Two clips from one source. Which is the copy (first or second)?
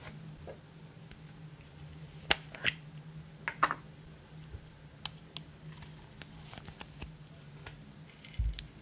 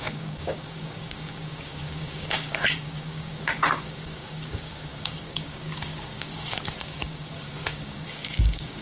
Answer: second